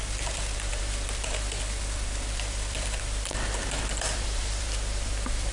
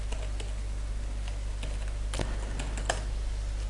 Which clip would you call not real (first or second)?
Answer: first